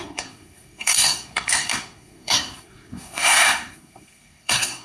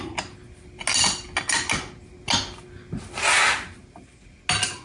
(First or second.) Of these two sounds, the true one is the second